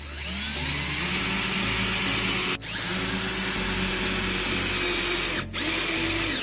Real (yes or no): yes